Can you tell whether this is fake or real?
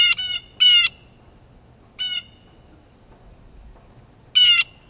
real